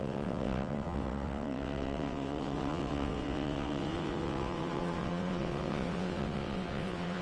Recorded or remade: remade